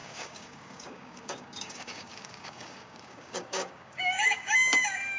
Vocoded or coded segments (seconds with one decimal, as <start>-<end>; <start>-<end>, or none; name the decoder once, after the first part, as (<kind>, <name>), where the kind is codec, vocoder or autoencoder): 0.0-5.2 (codec, DAC)